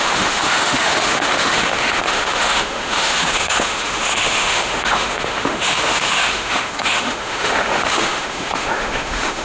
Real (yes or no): no